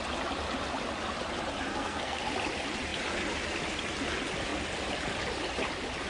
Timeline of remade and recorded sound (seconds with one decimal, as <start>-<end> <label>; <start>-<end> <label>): 0.0-1.7 recorded; 1.7-2.2 remade; 2.2-6.1 recorded